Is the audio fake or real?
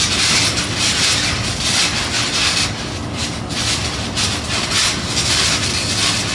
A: real